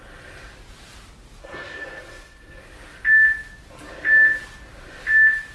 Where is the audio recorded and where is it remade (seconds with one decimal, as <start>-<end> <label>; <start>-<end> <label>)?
0.0-1.4 recorded; 1.4-2.6 remade; 2.6-5.5 recorded

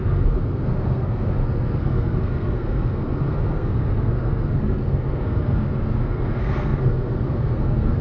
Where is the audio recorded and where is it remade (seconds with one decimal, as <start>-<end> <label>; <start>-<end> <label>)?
0.0-8.0 remade

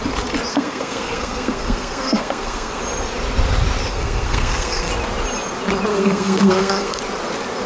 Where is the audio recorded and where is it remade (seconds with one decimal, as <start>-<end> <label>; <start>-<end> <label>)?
0.0-0.5 recorded; 0.5-2.8 remade; 2.8-3.9 recorded; 3.9-4.9 remade; 4.9-5.9 recorded; 5.9-7.0 remade; 7.0-7.7 recorded

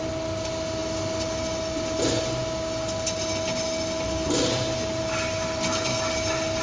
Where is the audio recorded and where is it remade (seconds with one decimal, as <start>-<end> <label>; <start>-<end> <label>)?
0.0-6.6 recorded

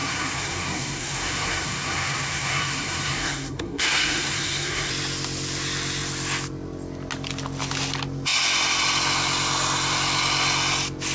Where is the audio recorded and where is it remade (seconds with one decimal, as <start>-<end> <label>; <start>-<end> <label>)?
0.0-4.9 remade; 4.9-11.1 recorded

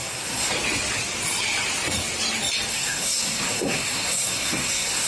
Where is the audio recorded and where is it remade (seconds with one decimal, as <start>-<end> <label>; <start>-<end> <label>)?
0.0-0.5 remade; 0.5-2.7 recorded; 2.7-5.1 remade